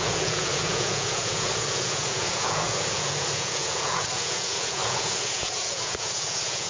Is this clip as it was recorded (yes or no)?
no